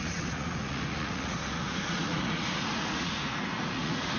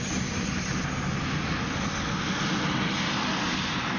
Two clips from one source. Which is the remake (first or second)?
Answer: first